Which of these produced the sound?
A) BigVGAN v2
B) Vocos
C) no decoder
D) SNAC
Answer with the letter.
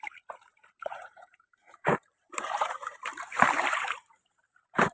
A